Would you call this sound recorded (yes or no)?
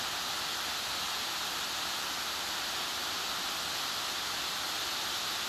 yes